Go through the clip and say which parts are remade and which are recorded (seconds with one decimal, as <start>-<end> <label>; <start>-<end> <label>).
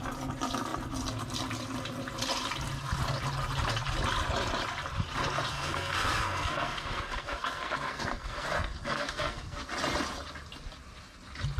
0.0-5.5 recorded; 5.5-9.7 remade; 9.7-11.6 recorded